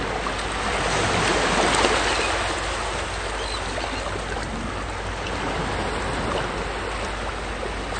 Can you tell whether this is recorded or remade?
recorded